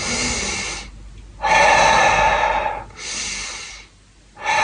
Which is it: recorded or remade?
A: recorded